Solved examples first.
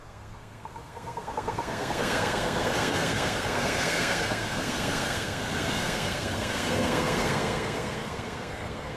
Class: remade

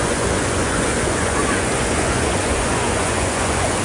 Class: remade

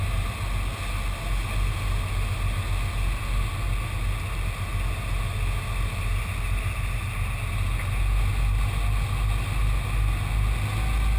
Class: recorded